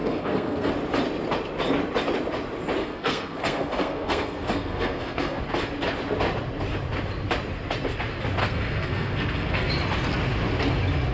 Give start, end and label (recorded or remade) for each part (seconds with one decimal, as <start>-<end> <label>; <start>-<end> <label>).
0.0-0.7 remade; 0.7-2.8 recorded; 2.8-5.4 remade; 5.4-8.4 recorded; 8.4-9.7 remade; 9.7-11.1 recorded